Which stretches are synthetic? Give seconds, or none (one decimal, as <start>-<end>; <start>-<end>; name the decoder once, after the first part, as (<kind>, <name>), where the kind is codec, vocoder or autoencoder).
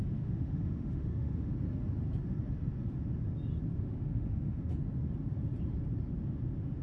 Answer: 0.0-1.5 (autoencoder, DAC-VAE); 3.8-4.7